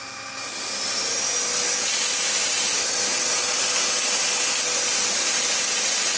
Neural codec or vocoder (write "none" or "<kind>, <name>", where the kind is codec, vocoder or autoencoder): none